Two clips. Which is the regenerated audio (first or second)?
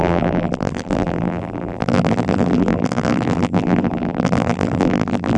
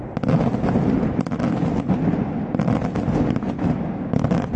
first